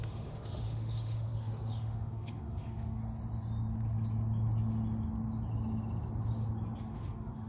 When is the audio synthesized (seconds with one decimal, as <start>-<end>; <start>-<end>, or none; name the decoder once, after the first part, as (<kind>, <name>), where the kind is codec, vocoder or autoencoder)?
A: 0.0-3.0 (autoencoder, DAC-VAE); 6.8-7.5